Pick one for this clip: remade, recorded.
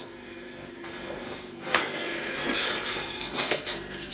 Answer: remade